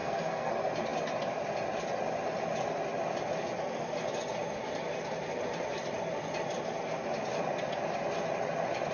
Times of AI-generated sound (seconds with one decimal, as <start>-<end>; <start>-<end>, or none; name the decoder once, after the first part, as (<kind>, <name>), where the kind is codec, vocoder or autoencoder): 0.0-0.5 (codec, SNAC)

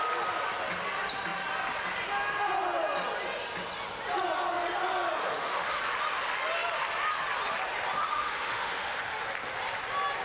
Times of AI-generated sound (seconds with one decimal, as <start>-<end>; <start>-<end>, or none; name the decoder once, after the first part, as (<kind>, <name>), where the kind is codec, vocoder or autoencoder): 5.2-5.8 (autoencoder, DAC-VAE); 8.1-9.2

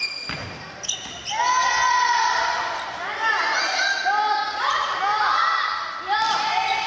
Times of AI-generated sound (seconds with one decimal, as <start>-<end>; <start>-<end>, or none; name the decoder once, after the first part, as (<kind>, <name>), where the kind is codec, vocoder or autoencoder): none

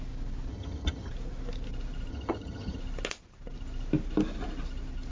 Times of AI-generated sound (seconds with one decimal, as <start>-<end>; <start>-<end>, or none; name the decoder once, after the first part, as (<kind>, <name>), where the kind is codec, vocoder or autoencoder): 0.5-1.1 (vocoder, HiFi-GAN); 2.1-2.8

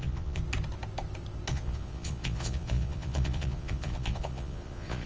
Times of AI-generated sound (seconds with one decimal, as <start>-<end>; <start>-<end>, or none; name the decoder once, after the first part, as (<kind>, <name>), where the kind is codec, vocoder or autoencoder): 0.0-0.4 (vocoder, Vocos); 1.5-5.1

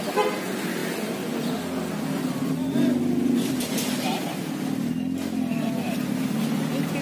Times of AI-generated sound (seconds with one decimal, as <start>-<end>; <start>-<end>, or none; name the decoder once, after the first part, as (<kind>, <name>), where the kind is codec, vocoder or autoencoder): none